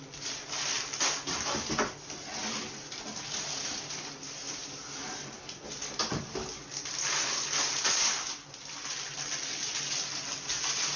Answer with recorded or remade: recorded